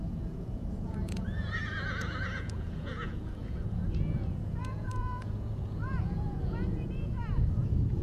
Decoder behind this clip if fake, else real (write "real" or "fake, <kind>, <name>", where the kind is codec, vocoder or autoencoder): fake, vocoder, Vocos